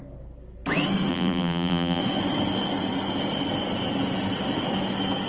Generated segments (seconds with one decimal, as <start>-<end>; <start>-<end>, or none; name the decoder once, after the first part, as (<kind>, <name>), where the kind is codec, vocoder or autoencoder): 1.1-2.0 (vocoder, BigVGAN v2)